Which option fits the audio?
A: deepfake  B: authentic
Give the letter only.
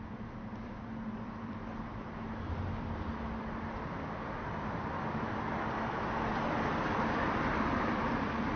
A